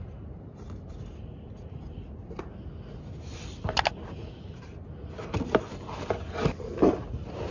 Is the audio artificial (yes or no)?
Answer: no